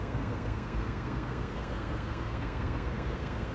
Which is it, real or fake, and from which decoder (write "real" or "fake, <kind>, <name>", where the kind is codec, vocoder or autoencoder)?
fake, codec, SNAC